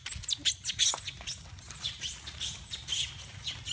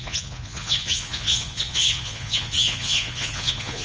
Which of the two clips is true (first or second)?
first